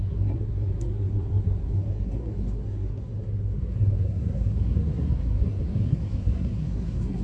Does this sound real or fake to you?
fake